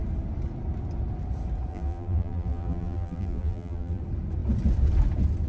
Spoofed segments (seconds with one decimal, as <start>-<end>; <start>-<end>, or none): 1.7-4.0